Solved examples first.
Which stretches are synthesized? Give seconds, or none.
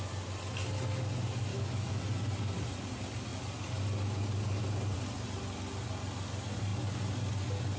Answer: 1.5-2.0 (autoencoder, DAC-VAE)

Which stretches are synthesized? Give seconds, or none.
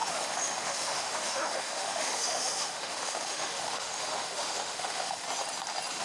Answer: 0.0-5.2 (autoencoder, DAC-VAE)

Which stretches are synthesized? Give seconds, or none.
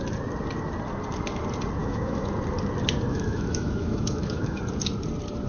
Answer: 1.8-2.3 (autoencoder, DAC-VAE); 3.1-4.6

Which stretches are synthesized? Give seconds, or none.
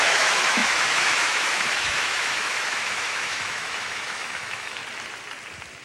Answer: 0.0-4.8 (autoencoder, DAC-VAE)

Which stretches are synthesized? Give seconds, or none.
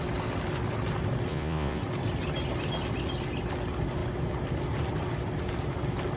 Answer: 1.3-1.8 (vocoder, Vocos)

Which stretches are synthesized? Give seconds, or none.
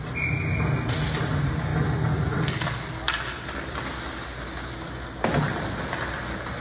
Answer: none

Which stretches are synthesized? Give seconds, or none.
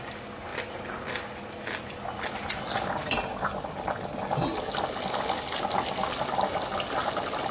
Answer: none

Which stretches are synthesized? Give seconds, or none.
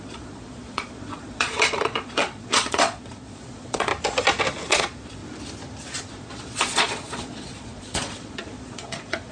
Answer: 0.0-3.9 (vocoder, Vocos); 4.7-5.2; 6.1-9.3